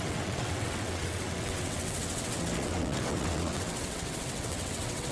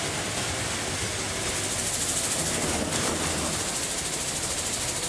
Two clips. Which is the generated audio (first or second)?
first